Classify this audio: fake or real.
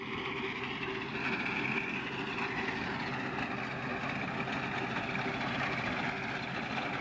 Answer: real